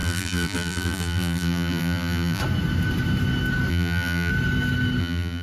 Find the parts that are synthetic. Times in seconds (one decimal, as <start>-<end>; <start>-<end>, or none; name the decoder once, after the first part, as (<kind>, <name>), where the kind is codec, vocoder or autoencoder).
0.0-2.4 (vocoder, BigVGAN v2); 3.7-4.3; 5.0-5.4